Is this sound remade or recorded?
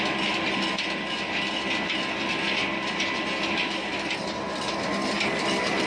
recorded